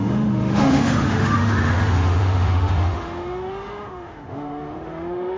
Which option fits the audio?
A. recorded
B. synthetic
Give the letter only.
B